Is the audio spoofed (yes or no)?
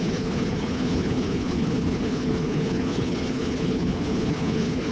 yes